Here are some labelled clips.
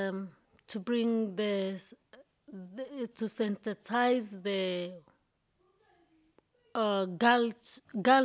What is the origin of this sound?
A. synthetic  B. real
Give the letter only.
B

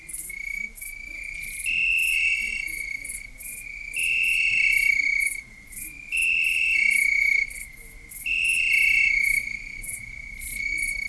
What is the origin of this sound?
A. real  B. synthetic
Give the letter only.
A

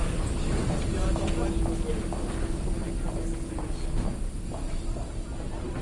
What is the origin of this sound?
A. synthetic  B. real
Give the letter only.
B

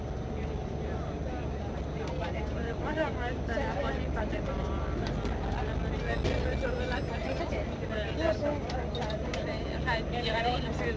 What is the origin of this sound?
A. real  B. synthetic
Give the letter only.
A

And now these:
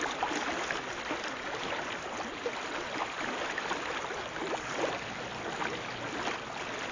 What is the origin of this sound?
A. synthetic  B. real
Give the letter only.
B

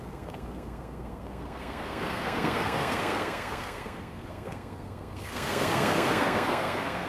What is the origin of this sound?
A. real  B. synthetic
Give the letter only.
B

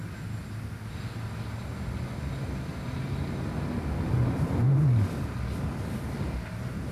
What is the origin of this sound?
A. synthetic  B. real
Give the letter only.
B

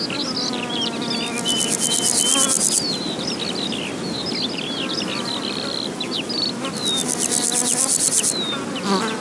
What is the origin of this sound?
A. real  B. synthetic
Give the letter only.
A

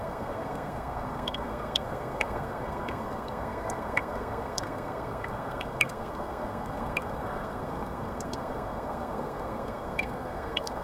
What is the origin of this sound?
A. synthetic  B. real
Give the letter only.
A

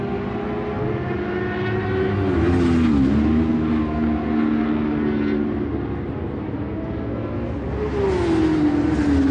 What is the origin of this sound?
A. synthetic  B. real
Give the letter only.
B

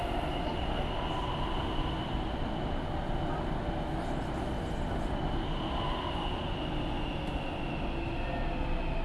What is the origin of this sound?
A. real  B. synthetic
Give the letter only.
A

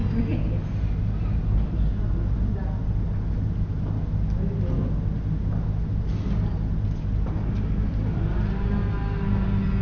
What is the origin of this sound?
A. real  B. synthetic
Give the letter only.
A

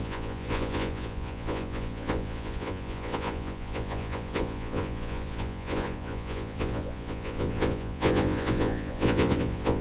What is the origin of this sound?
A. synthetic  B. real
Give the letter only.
A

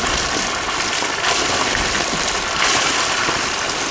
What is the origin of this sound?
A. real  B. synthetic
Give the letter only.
A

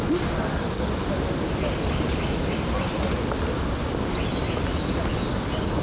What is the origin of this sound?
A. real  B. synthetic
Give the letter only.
A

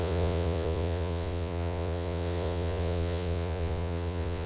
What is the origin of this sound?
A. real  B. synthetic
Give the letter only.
B